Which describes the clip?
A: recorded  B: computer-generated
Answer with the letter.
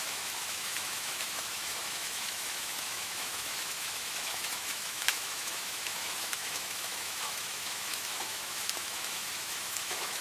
B